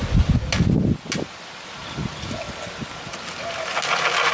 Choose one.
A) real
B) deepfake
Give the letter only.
A